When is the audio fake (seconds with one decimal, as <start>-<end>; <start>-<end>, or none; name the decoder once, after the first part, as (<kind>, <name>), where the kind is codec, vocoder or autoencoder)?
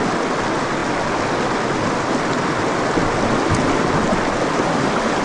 none